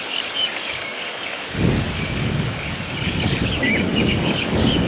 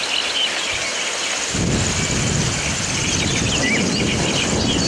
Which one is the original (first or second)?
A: second